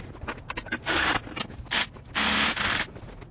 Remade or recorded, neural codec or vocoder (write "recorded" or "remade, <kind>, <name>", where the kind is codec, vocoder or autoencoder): recorded